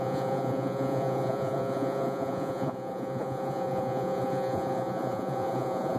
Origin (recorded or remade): remade